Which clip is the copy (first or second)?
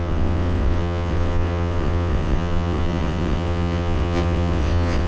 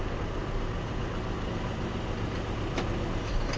first